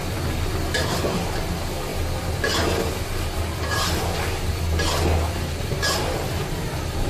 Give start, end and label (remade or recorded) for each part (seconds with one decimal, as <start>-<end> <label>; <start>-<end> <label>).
0.0-7.1 recorded